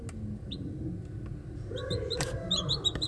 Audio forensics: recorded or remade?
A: recorded